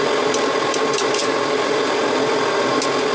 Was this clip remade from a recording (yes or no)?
no